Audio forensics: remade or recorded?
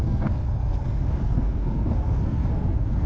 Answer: remade